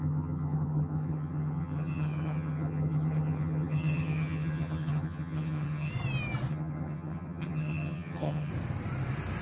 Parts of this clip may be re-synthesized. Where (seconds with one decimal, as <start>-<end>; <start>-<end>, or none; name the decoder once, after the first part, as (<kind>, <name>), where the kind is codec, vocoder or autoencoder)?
0.0-5.9 (vocoder, HiFi-GAN); 6.5-8.5